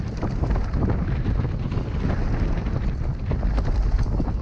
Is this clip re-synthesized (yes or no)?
no